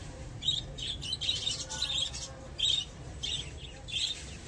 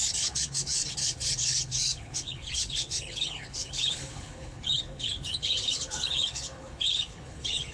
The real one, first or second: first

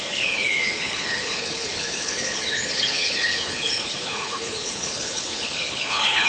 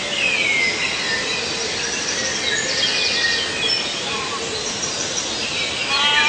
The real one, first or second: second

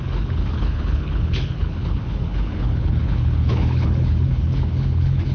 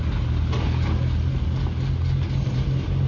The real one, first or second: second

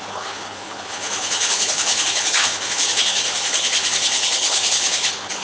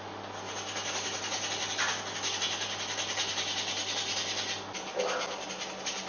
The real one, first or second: second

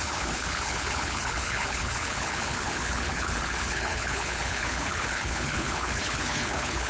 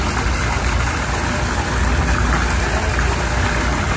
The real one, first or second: second